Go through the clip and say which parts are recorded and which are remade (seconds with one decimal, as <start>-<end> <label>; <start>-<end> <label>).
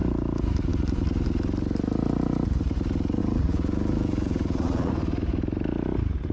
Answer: 0.0-3.2 recorded; 3.2-4.9 remade; 4.9-6.3 recorded